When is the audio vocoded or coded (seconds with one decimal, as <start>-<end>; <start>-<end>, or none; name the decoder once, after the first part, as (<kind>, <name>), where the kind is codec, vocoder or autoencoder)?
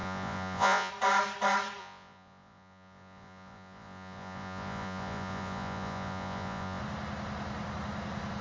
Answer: 0.0-0.9 (vocoder, Vocos); 1.8-6.8